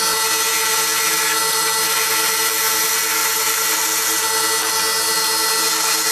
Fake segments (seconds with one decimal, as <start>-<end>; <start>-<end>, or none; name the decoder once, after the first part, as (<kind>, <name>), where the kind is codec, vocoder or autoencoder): none